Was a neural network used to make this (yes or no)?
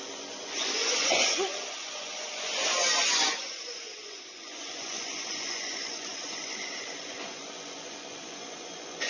yes